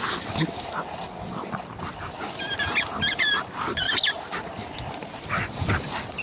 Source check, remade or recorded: recorded